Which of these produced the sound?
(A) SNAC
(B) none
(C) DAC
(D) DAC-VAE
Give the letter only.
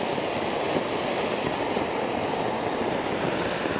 B